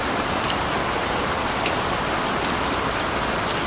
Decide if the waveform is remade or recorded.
recorded